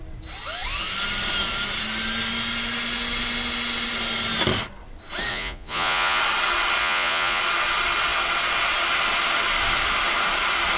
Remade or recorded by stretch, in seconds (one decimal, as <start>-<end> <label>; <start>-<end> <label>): 0.0-5.3 recorded; 5.3-6.2 remade; 6.2-6.8 recorded; 6.8-7.4 remade; 7.4-10.8 recorded